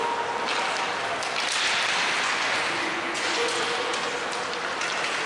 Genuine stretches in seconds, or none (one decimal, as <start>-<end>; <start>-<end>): 0.0-2.2; 4.1-5.3